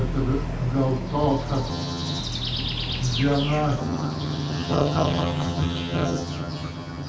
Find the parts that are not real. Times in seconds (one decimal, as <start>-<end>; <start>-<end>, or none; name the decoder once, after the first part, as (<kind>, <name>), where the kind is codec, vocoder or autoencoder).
1.7-2.2 (vocoder, HiFi-GAN); 3.8-7.1